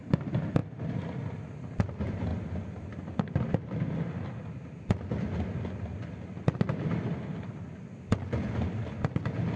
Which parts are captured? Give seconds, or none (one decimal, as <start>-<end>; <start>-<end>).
0.0-9.6